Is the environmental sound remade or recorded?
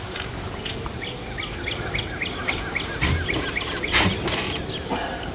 recorded